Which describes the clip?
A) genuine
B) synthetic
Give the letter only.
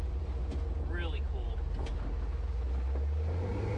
A